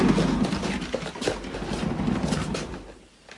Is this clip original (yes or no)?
yes